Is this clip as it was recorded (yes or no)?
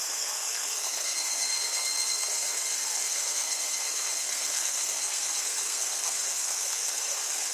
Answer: no